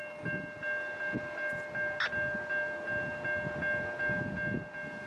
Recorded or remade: recorded